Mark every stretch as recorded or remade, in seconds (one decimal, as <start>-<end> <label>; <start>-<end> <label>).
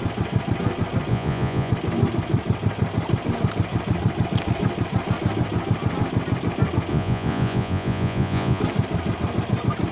0.0-1.1 recorded; 1.1-1.7 remade; 1.7-6.9 recorded; 6.9-8.6 remade; 8.6-9.9 recorded